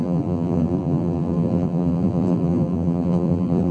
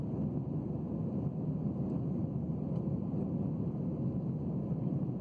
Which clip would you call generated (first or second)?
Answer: first